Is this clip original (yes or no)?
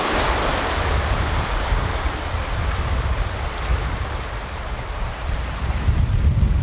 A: yes